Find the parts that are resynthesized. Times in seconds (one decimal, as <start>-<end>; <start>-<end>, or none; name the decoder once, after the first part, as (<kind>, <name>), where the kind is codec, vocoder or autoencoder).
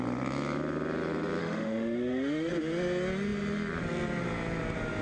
1.4-2.5 (autoencoder, DAC-VAE)